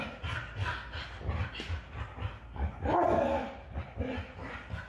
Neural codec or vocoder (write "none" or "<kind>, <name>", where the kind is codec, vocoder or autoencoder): none